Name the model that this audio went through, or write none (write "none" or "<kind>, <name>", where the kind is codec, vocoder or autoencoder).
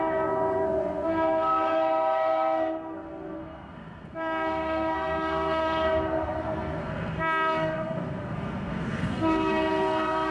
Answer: codec, SNAC